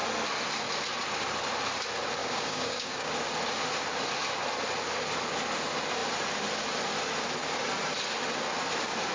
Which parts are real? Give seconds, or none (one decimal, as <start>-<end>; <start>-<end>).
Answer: 0.0-2.2; 3.1-9.1